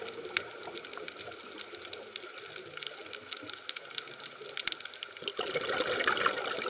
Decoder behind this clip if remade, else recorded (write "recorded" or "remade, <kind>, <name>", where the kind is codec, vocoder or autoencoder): recorded